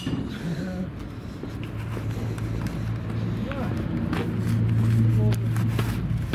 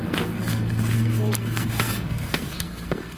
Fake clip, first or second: second